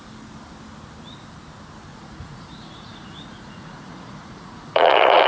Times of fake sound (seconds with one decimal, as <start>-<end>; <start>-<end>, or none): 1.9-5.3